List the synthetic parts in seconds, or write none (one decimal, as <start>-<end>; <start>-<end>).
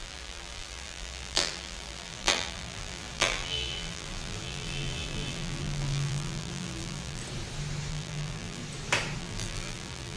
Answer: 0.0-7.2; 7.9-8.6; 9.2-10.2